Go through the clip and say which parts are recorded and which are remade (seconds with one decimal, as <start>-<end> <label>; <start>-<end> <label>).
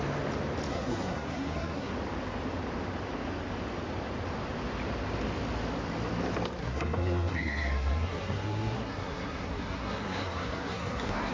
0.0-0.7 recorded; 0.7-1.9 remade; 1.9-6.6 recorded; 6.6-11.3 remade